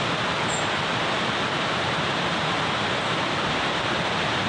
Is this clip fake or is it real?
real